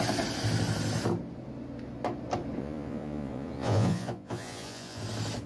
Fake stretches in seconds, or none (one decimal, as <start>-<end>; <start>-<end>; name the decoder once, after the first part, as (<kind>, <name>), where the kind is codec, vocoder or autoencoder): 2.6-5.0 (vocoder, Vocos)